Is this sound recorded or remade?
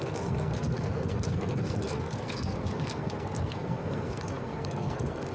remade